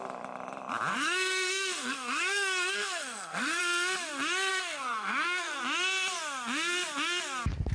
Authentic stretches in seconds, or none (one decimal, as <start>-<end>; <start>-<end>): 0.0-0.9; 3.6-4.5; 5.6-7.7